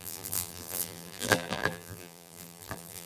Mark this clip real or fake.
fake